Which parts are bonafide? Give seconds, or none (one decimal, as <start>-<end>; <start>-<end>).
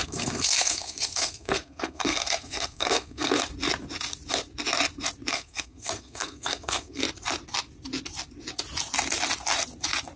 3.3-5.3; 7.0-10.2